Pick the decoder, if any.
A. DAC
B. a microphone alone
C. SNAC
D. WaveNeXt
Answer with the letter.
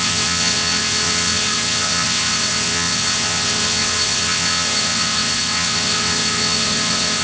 D